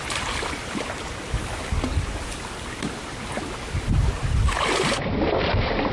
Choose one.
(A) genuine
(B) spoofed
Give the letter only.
A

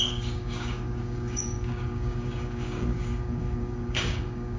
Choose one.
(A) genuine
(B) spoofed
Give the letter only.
B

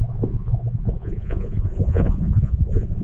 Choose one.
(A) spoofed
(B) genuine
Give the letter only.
A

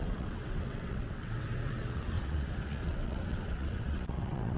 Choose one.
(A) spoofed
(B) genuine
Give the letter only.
A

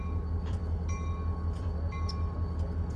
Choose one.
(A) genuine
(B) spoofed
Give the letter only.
B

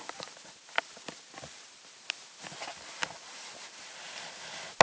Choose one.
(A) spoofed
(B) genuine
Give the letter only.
B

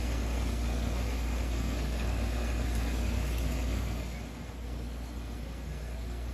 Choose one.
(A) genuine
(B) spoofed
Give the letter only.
B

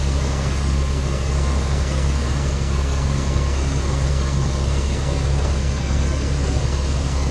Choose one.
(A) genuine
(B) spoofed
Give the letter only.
B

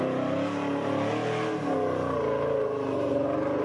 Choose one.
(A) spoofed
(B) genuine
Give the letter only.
B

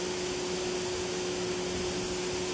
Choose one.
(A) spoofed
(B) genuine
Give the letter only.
B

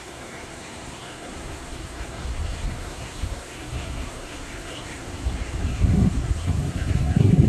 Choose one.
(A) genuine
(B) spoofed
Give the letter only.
B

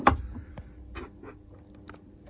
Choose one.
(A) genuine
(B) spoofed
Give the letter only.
A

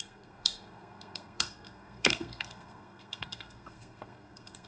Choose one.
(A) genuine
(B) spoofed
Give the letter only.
B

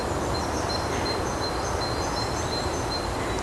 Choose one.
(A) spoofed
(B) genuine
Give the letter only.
B